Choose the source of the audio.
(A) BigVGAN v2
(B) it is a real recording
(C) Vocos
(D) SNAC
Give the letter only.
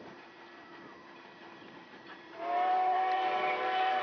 A